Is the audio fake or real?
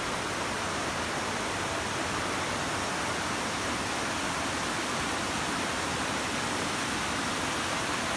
real